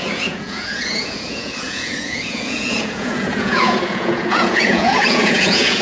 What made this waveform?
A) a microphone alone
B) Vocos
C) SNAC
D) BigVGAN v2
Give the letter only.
B